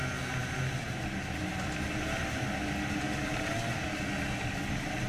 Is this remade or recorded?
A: recorded